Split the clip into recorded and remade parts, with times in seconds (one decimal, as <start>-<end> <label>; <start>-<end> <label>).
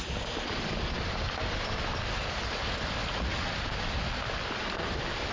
0.0-3.0 recorded; 3.0-3.5 remade; 3.5-5.3 recorded